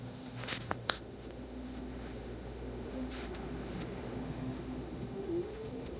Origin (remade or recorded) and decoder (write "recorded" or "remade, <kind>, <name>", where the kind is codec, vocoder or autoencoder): remade, autoencoder, DAC-VAE